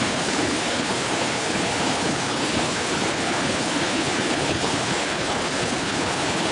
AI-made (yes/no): yes